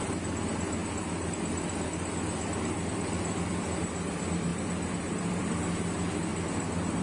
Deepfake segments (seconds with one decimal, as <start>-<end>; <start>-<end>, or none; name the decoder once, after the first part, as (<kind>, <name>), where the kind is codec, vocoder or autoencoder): none